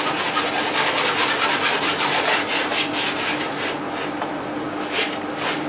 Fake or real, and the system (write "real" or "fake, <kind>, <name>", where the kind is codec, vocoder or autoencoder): real